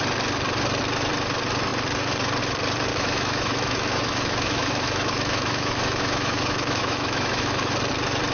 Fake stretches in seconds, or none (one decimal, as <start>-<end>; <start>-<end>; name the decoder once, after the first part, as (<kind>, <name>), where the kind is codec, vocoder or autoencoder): 2.9-7.7 (autoencoder, DAC-VAE)